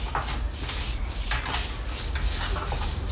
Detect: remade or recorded recorded